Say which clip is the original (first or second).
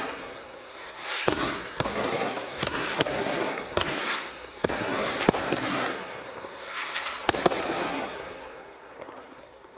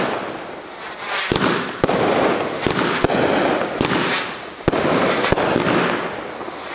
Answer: second